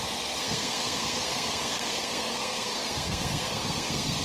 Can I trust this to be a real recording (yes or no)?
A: no